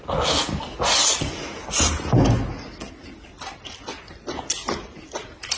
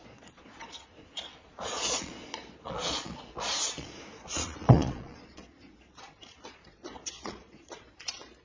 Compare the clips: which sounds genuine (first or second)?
first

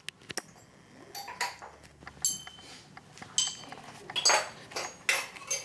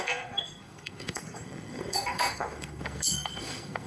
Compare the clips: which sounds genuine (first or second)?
first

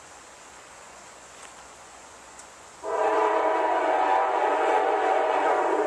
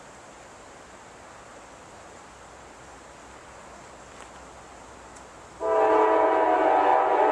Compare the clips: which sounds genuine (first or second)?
second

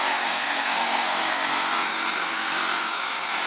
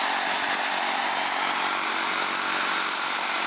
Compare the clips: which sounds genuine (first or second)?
second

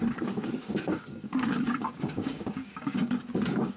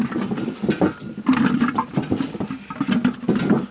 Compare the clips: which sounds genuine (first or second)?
second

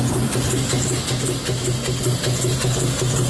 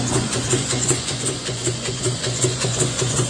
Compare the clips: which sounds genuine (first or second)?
first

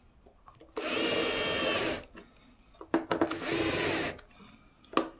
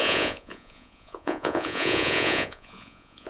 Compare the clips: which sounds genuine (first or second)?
first